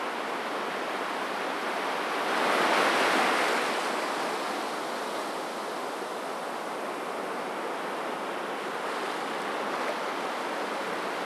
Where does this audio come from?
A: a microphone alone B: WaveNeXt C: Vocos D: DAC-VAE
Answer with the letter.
A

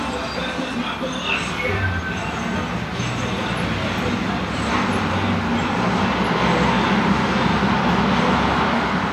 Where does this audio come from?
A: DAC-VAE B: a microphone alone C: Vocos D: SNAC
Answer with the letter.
B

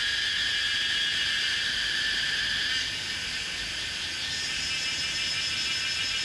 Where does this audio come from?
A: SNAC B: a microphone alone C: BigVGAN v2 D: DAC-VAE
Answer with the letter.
B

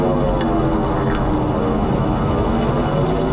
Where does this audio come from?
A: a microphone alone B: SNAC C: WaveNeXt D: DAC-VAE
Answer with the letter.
A